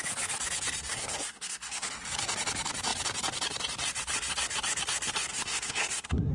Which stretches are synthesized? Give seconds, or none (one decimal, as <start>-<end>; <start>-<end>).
0.9-1.9; 5.3-6.3